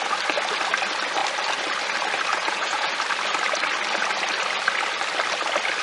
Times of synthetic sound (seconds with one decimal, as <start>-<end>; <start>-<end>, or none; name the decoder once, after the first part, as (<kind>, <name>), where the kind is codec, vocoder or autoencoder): 2.3-2.9 (vocoder, Vocos)